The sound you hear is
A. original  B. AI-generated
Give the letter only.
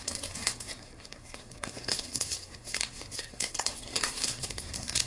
B